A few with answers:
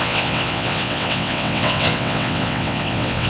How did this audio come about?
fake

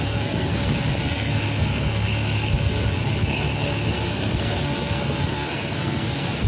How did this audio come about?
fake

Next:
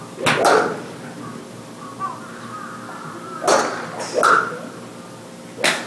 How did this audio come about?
real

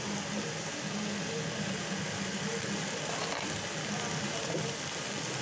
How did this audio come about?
real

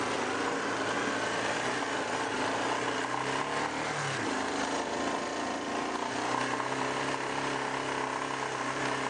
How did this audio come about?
real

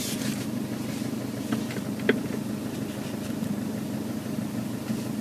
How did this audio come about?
real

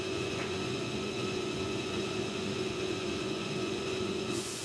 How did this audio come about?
fake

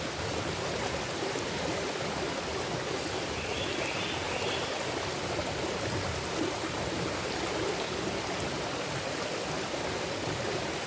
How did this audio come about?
real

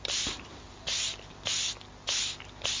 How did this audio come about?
real